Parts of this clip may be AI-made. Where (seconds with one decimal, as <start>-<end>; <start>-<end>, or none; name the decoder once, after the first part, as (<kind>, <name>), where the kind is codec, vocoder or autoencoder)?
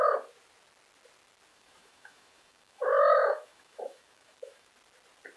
1.5-4.7 (autoencoder, DAC-VAE)